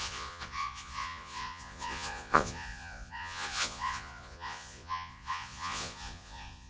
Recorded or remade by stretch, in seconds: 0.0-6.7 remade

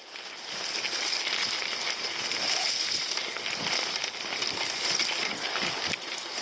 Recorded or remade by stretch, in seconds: 0.0-6.4 recorded

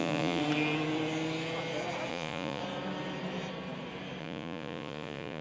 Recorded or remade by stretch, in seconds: 0.0-0.4 remade; 0.4-2.1 recorded; 2.1-2.6 remade; 2.6-4.2 recorded; 4.2-5.4 remade

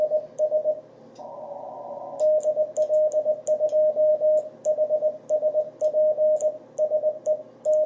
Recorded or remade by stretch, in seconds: 0.0-7.9 recorded

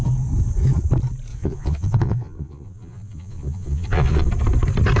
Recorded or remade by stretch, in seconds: 0.0-1.3 recorded; 1.3-4.3 remade; 4.3-5.0 recorded

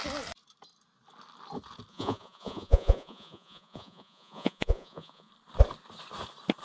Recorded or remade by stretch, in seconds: 0.0-1.9 recorded; 1.9-5.3 remade; 5.3-6.6 recorded

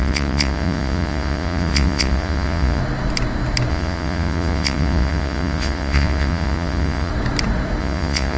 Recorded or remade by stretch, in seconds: 0.0-2.8 remade; 2.8-3.7 recorded; 3.7-7.1 remade; 7.1-7.8 recorded; 7.8-8.4 remade

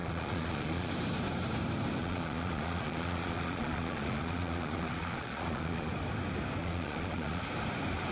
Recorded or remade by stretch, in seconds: 0.0-0.9 remade; 0.9-2.0 recorded; 2.0-5.9 remade; 5.9-6.6 recorded; 6.6-7.4 remade; 7.4-8.1 recorded